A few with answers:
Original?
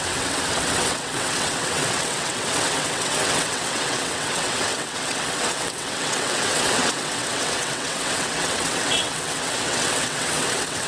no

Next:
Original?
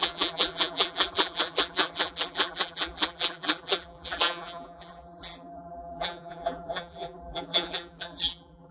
no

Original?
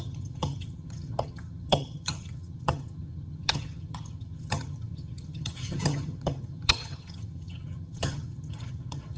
no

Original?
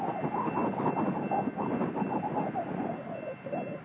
yes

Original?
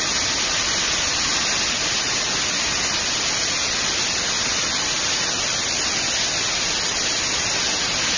yes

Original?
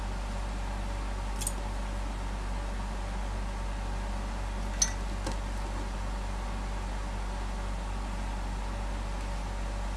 yes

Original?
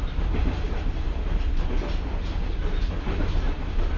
yes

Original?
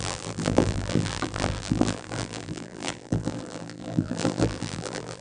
no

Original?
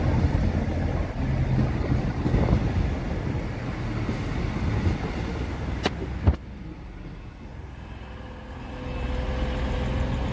yes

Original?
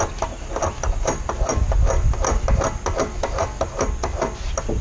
yes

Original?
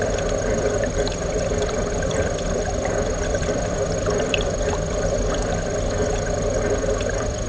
no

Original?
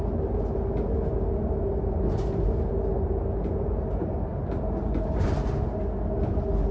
yes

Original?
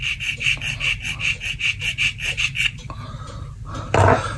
yes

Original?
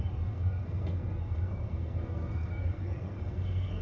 no